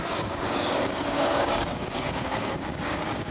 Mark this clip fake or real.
fake